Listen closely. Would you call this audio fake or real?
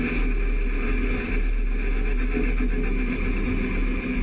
real